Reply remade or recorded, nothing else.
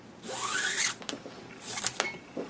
recorded